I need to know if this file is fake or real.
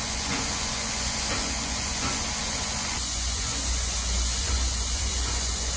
fake